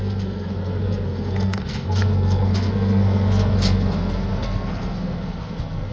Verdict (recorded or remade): remade